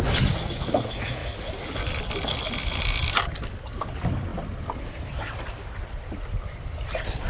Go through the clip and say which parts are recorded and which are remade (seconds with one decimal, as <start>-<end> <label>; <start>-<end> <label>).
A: 0.0-7.3 recorded